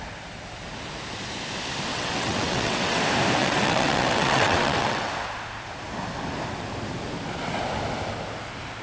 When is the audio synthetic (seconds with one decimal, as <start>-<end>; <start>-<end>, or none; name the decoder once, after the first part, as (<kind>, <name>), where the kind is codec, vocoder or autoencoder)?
1.9-3.0 (vocoder, WaveNeXt); 3.4-5.1